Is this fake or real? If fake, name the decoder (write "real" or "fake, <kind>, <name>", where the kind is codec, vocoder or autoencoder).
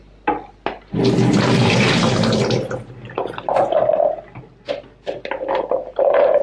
real